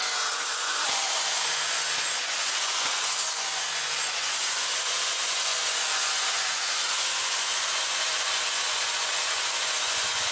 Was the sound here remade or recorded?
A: remade